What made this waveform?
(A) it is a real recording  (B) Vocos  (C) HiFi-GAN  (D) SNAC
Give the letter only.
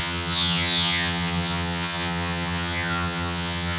C